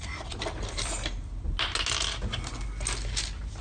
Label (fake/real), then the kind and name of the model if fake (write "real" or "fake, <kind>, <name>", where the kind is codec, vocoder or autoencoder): real